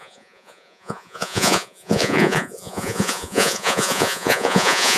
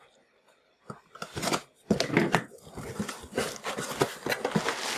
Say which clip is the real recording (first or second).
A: second